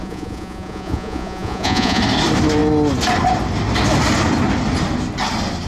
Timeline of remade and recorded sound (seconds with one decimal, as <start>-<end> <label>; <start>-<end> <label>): 0.0-2.0 remade; 2.0-5.7 recorded